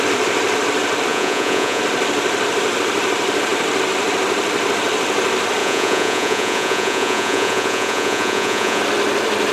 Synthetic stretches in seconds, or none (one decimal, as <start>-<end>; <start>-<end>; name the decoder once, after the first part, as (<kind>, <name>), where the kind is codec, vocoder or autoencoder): 1.1-1.8 (vocoder, Vocos); 5.6-8.8